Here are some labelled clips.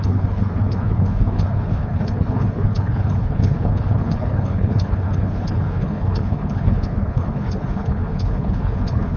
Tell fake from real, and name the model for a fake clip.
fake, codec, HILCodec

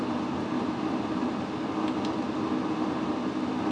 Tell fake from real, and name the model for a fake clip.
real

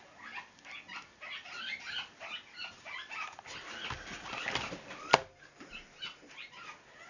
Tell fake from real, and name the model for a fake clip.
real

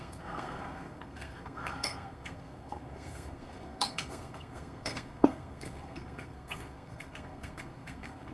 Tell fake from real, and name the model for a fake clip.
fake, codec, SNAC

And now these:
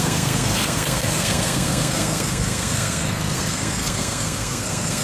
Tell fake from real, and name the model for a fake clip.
fake, codec, SNAC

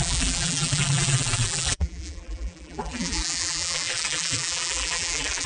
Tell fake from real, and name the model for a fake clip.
fake, vocoder, BigVGAN v2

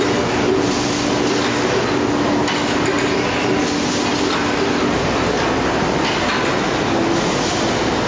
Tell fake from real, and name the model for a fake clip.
real